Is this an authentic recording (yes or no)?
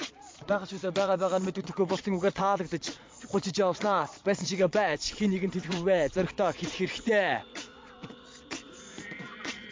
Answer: no